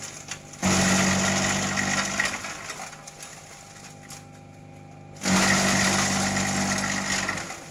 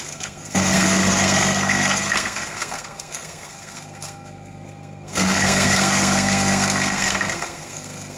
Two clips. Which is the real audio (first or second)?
first